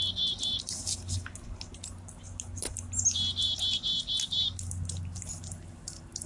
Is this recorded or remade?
recorded